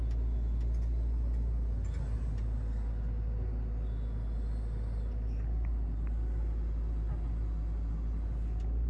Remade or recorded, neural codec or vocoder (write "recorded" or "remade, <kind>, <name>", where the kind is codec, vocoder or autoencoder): recorded